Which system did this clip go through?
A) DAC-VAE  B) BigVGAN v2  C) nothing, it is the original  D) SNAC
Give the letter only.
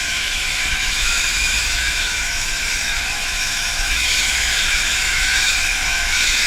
A